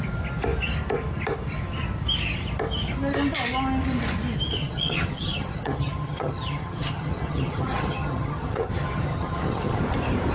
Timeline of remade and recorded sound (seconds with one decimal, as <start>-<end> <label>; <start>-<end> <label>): 0.0-4.6 recorded; 4.6-9.8 remade; 9.8-10.3 recorded